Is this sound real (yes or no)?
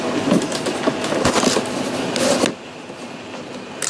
yes